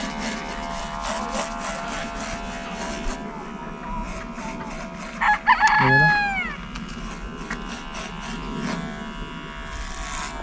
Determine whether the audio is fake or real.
real